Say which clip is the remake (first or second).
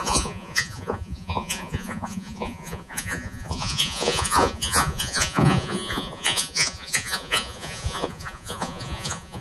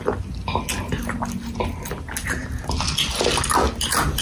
first